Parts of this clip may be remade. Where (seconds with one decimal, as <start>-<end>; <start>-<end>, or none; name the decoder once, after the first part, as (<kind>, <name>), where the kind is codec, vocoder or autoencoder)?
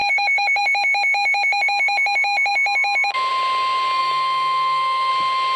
0.0-0.6 (autoencoder, DAC-VAE); 4.0-5.1